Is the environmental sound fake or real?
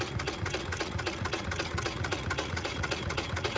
fake